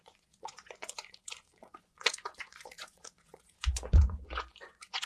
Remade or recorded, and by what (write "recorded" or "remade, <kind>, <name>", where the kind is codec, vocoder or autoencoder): remade, vocoder, Vocos